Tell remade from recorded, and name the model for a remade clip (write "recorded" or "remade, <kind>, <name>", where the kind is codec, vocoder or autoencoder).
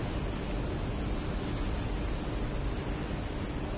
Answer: recorded